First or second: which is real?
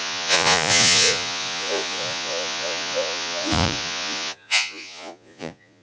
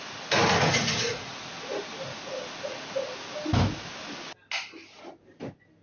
second